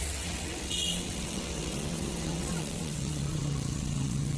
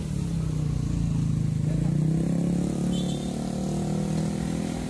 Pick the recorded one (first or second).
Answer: second